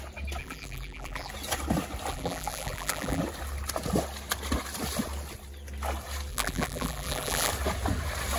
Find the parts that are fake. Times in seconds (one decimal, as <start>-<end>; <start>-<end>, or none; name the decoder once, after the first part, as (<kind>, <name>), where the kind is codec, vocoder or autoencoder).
0.4-1.3 (vocoder, BigVGAN v2); 2.1-3.2; 6.3-7.5